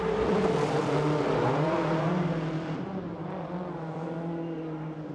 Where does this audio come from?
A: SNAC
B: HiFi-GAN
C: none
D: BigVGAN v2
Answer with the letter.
D